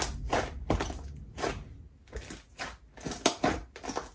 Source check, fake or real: real